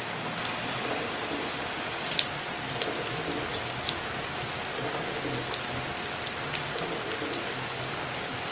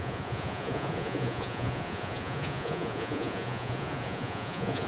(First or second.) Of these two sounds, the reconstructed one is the second